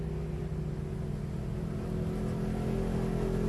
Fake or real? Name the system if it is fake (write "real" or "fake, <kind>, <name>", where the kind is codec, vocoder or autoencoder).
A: real